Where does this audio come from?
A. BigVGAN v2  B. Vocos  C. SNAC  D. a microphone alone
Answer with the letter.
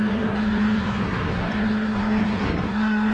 C